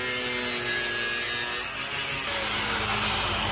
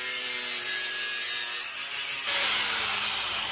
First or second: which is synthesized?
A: second